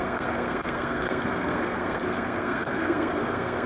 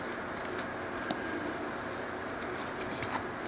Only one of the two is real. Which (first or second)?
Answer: second